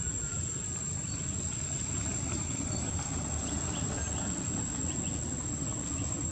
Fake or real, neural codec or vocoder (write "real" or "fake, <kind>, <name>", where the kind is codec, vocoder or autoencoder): real